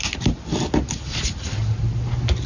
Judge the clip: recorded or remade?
recorded